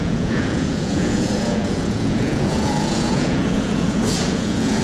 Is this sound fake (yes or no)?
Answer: yes